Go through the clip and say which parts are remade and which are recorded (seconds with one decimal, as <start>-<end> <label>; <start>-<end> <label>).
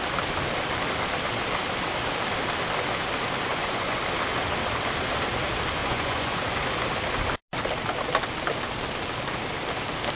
0.0-3.5 recorded; 3.5-4.0 remade; 4.0-5.8 recorded; 5.8-6.4 remade; 6.4-10.2 recorded